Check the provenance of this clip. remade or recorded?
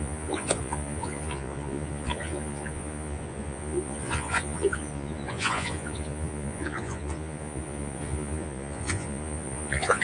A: remade